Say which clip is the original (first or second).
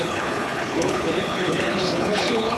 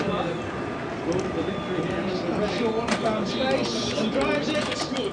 second